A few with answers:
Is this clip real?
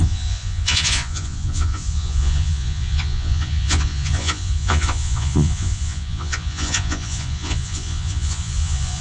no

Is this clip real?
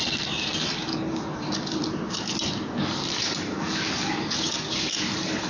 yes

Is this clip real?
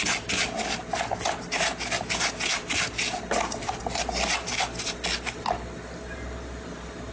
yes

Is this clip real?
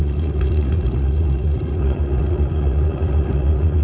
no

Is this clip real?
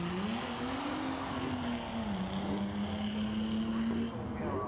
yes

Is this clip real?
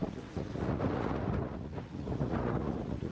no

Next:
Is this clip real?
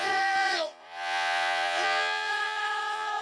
no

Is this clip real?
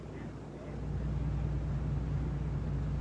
yes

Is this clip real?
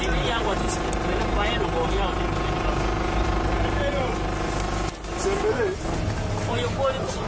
yes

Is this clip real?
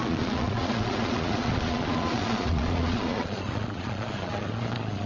no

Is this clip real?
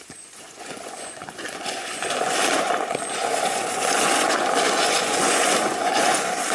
no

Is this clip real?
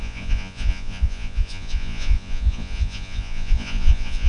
no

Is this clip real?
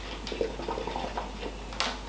yes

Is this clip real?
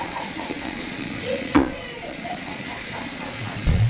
no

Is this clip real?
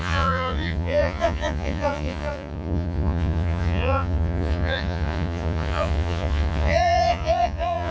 no